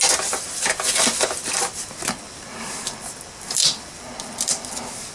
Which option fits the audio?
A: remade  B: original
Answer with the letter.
B